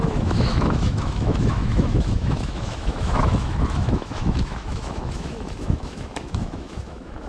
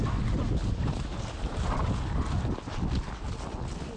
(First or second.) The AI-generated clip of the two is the first